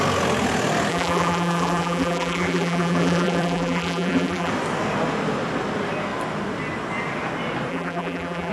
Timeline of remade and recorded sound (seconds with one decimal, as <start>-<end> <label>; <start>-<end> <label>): 0.0-0.9 recorded; 0.9-4.5 remade; 4.5-7.7 recorded; 7.7-8.5 remade